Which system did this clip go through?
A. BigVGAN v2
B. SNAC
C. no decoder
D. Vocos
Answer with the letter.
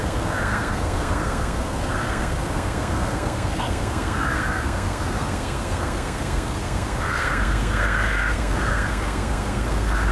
B